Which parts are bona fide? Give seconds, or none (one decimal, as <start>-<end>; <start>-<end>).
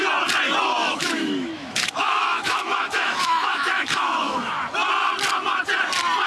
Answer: 0.0-0.8; 4.6-6.3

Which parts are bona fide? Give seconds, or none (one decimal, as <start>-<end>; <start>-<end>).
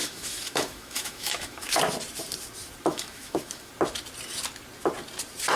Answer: 1.8-2.9; 3.7-5.6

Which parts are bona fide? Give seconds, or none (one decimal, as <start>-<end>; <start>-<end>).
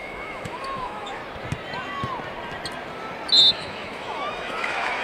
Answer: 1.2-3.5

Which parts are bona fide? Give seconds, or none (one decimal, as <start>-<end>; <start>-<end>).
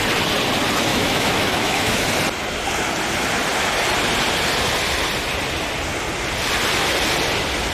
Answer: 0.0-0.9; 2.1-7.7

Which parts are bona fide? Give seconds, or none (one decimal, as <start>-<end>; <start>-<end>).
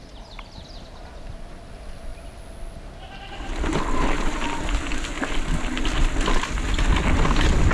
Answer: 0.0-7.7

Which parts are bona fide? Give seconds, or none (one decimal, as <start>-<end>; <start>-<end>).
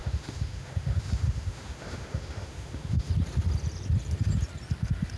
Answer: 3.1-5.2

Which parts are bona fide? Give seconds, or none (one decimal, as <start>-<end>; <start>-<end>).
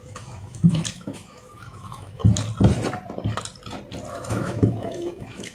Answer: 2.2-4.1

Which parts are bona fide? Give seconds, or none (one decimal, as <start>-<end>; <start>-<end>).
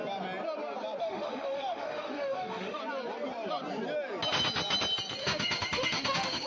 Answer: 0.0-1.0; 2.8-5.2